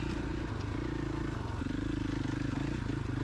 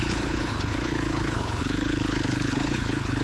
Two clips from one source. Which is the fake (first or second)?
second